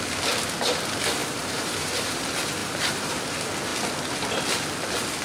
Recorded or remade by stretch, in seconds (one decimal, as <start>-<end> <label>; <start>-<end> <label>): 0.0-1.2 recorded; 1.2-2.2 remade; 2.2-2.6 recorded; 2.6-3.2 remade; 3.2-5.2 recorded